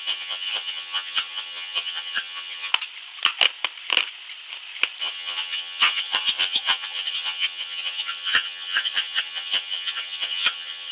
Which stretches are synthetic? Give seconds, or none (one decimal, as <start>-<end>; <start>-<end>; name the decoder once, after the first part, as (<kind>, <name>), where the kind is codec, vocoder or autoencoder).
0.0-2.7 (vocoder, HiFi-GAN); 5.0-10.9